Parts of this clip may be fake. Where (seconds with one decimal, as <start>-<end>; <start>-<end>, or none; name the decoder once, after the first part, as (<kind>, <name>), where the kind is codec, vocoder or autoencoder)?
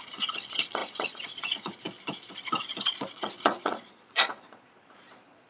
0.0-5.5 (vocoder, Vocos)